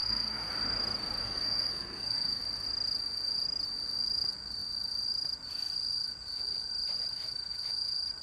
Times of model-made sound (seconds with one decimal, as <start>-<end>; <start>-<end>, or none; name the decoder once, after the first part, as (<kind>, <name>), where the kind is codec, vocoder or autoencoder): 0.0-0.5 (codec, SNAC); 1.2-2.4